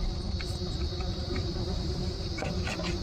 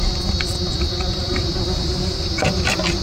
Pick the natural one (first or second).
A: second